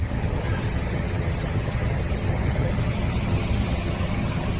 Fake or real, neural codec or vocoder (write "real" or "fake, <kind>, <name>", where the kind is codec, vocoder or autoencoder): fake, vocoder, HiFi-GAN